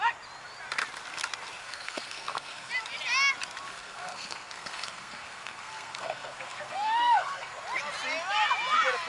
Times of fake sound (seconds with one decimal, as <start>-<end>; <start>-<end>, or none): 1.6-2.7; 3.7-7.5